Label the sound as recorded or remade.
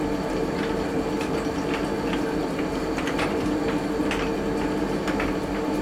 recorded